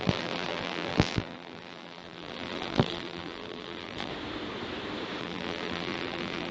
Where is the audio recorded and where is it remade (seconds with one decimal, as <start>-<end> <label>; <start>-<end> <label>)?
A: 0.0-4.1 remade; 4.1-5.2 recorded; 5.2-6.5 remade